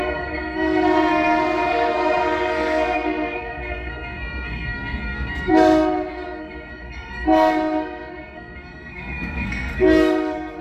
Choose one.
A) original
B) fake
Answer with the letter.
B